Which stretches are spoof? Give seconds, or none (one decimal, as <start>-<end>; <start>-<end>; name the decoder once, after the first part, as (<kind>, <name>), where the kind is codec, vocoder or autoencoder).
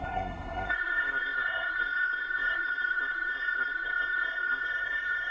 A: 0.0-5.3 (codec, SNAC)